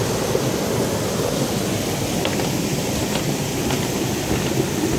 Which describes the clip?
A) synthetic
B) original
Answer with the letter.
B